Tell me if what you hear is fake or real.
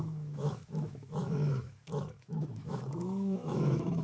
fake